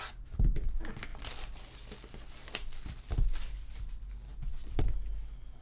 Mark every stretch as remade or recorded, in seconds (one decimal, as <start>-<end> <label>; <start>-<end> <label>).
0.0-5.6 recorded